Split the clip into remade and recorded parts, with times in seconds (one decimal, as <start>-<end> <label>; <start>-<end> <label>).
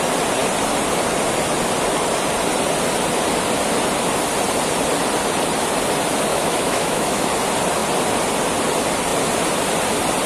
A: 0.0-6.3 recorded; 6.3-7.3 remade; 7.3-10.3 recorded